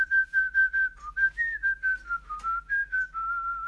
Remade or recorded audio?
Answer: recorded